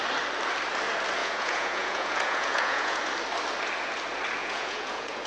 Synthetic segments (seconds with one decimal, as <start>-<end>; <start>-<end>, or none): 1.2-3.0; 4.4-5.3